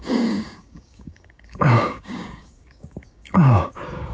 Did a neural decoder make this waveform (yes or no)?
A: yes